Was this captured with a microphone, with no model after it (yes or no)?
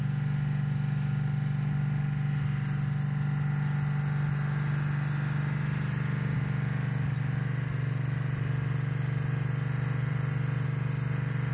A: yes